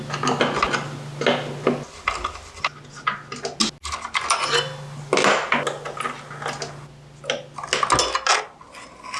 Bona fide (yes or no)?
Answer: yes